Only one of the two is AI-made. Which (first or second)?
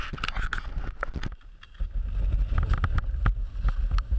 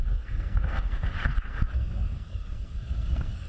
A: second